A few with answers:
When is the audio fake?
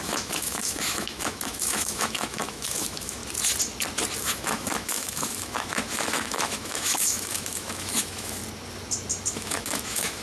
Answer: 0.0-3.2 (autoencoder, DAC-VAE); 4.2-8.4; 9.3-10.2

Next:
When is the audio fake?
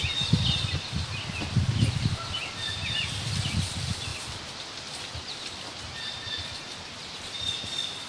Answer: none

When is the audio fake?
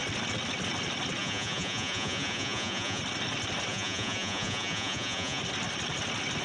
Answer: 1.2-3.0 (vocoder, Vocos); 3.7-5.4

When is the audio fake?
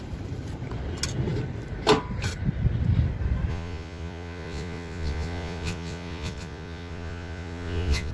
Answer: 3.5-8.1 (vocoder, Vocos)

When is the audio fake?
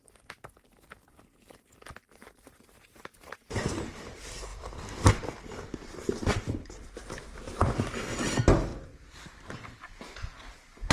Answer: 4.5-5.1 (vocoder, BigVGAN v2); 6.3-7.7; 8.7-9.5